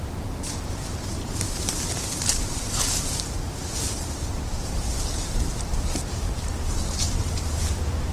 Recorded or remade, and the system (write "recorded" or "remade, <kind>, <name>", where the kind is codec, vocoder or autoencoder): remade, vocoder, BigVGAN v2